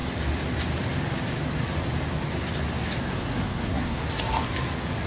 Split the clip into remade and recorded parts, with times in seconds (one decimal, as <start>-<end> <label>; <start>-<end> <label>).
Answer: 0.0-3.0 recorded; 3.0-4.0 remade; 4.0-5.1 recorded